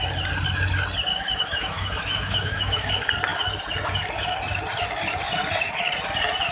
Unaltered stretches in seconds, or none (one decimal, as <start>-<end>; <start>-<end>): 0.0-1.1; 2.9-6.5